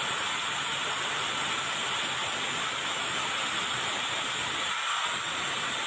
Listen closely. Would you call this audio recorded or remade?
recorded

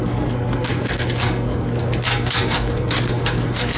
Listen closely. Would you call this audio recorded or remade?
remade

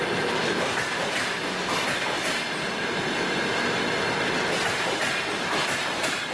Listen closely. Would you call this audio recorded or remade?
recorded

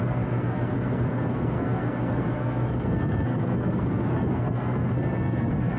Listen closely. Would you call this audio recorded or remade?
remade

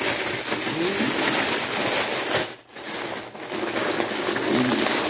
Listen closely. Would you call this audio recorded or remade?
recorded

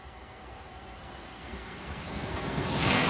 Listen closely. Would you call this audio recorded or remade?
remade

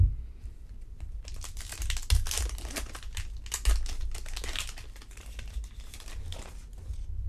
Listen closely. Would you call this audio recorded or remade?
recorded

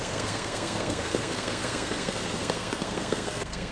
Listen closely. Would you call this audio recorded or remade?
remade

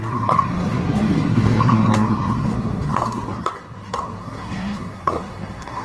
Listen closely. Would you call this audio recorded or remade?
remade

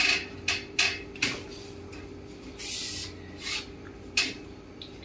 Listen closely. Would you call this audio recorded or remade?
recorded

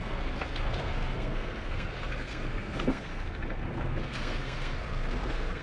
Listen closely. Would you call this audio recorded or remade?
remade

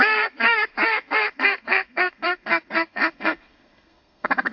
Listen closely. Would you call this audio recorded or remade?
remade